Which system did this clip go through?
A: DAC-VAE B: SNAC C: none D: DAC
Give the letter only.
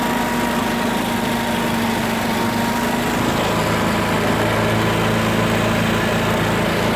C